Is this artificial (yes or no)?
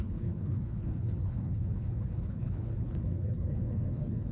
yes